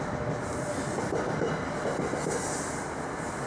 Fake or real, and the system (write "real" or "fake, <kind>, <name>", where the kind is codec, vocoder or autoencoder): real